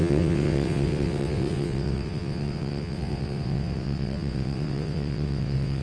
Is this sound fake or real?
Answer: fake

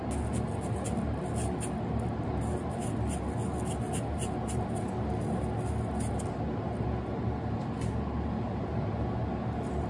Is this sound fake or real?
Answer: real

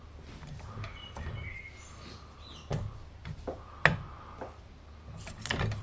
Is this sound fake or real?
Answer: real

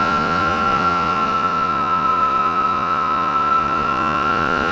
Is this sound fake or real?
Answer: fake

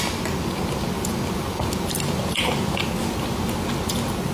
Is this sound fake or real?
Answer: real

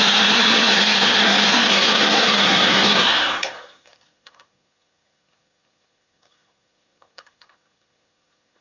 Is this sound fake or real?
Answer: fake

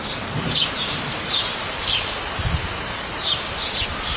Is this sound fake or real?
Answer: fake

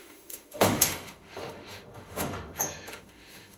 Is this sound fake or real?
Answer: fake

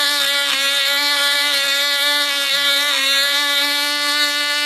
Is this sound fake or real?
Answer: fake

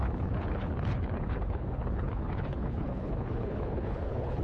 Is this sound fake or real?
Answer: fake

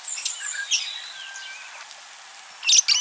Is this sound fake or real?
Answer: real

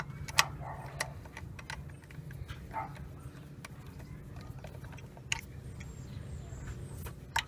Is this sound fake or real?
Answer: real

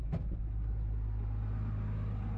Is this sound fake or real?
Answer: real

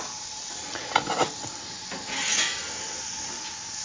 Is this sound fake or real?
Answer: real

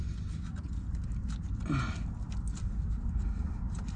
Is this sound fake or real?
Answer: real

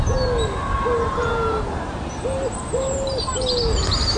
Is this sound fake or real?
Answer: real